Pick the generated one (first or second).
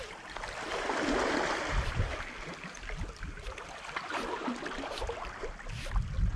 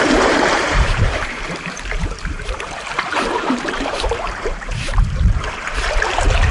second